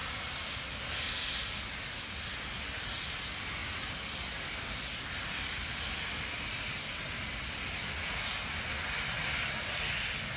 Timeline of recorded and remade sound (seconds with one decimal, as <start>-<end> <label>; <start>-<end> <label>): 0.0-10.4 recorded